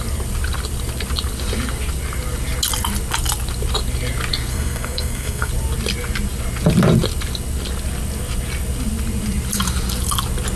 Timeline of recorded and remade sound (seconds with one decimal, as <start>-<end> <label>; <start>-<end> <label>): 0.0-4.5 recorded; 4.5-5.5 remade; 5.5-10.6 recorded